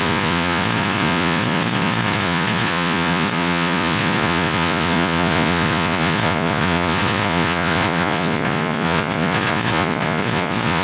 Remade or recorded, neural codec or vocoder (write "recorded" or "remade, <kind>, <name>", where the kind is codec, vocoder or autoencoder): remade, vocoder, Vocos